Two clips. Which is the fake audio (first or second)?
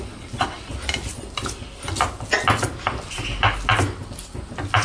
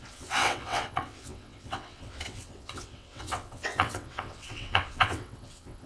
second